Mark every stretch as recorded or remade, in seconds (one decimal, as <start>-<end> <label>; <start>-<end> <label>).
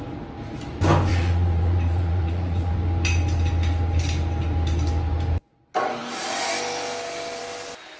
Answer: 0.0-1.1 recorded; 1.1-2.7 remade; 2.7-8.0 recorded